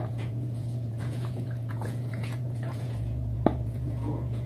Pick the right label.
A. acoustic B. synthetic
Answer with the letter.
B